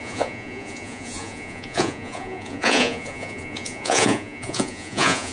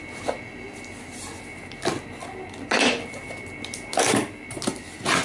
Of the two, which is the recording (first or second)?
second